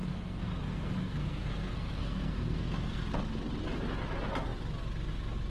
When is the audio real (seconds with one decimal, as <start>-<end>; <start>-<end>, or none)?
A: 3.2-5.5